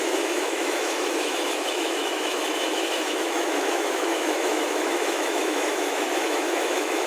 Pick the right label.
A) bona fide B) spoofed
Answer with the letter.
B